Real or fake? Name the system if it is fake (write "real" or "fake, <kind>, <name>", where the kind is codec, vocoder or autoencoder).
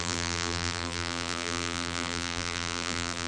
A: fake, vocoder, BigVGAN v2